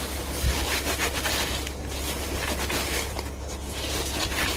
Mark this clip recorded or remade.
recorded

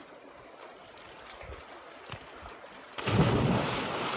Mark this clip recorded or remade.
recorded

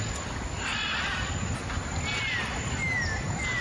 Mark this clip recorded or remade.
recorded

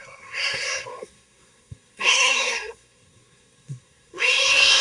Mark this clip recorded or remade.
remade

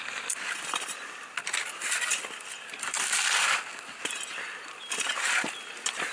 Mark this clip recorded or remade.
recorded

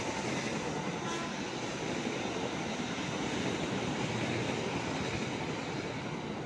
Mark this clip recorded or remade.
recorded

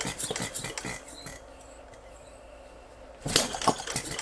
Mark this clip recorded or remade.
recorded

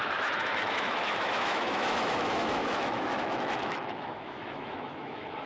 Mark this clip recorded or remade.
remade